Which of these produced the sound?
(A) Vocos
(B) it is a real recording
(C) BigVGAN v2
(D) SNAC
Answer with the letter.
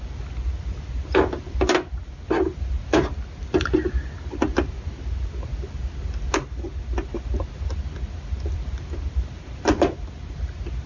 B